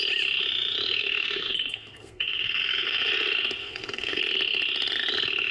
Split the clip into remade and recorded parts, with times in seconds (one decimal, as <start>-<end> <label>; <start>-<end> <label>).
0.0-1.0 recorded; 1.0-3.1 remade; 3.1-3.6 recorded; 3.6-4.2 remade; 4.2-5.5 recorded

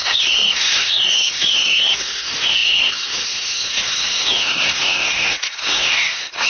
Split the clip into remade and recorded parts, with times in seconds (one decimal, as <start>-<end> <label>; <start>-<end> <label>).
0.0-6.5 remade

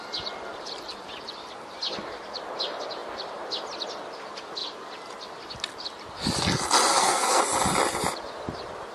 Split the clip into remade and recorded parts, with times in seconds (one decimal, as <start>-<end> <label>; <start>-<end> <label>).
0.0-6.9 recorded; 6.9-7.4 remade; 7.4-8.9 recorded

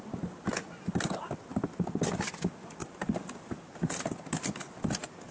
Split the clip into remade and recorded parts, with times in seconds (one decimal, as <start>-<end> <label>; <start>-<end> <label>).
0.0-5.3 recorded

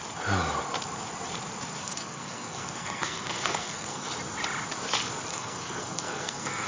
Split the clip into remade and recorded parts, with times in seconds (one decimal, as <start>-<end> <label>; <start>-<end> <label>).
0.0-1.8 recorded; 1.8-4.1 remade; 4.1-5.3 recorded; 5.3-6.7 remade

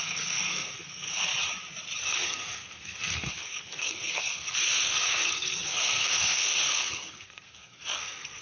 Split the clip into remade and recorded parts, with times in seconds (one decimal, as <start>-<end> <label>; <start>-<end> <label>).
0.0-1.3 remade; 1.3-2.0 recorded; 2.0-8.4 remade

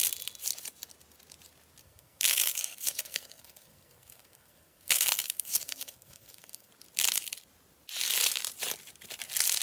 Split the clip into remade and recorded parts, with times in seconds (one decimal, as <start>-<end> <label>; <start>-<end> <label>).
0.0-1.8 recorded; 1.8-6.7 remade; 6.7-9.6 recorded